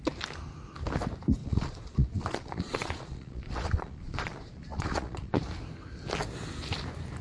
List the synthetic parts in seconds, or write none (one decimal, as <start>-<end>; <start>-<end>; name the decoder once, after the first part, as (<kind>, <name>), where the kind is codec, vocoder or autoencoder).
1.4-5.4 (vocoder, Vocos)